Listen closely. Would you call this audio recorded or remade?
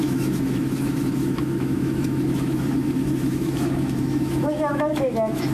remade